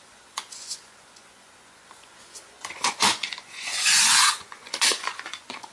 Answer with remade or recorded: remade